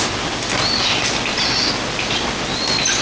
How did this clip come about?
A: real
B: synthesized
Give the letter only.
A